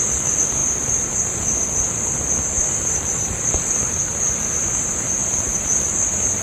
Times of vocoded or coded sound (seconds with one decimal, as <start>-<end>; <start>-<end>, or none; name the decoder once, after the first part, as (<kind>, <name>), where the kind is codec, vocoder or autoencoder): 0.6-4.4 (vocoder, BigVGAN v2); 5.2-6.4